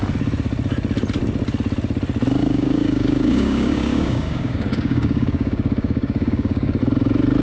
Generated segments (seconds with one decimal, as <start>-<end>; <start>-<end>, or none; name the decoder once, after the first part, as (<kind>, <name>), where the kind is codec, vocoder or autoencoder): 2.4-6.8 (codec, DAC)